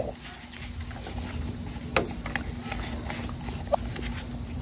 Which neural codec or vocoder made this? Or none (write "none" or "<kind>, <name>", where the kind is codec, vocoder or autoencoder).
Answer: none